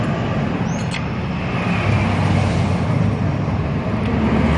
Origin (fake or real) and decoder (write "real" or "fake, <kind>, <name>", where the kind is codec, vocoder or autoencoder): real